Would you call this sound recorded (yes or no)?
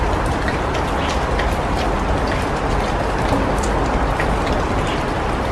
yes